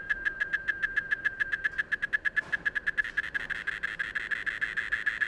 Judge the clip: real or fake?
real